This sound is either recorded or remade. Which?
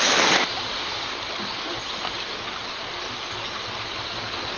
recorded